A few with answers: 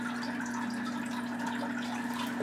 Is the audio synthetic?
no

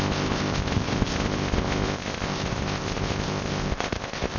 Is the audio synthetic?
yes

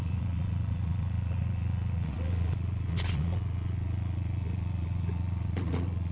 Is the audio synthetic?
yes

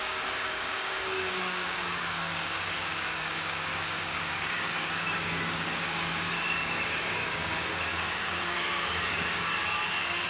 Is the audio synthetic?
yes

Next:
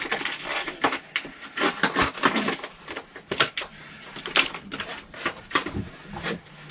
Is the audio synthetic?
no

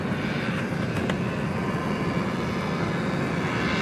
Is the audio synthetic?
no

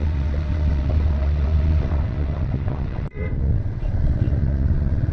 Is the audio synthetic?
yes